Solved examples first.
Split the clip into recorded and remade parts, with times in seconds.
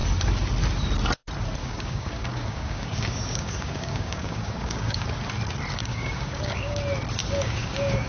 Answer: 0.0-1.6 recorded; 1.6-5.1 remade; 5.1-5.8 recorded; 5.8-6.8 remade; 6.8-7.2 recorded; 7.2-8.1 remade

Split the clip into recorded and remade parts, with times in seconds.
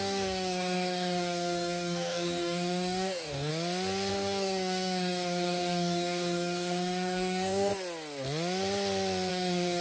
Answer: 0.0-3.5 remade; 3.5-4.1 recorded; 4.1-7.7 remade; 7.7-9.3 recorded; 9.3-9.8 remade